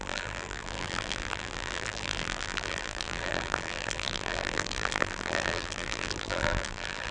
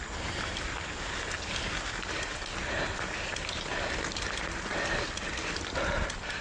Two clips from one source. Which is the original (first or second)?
second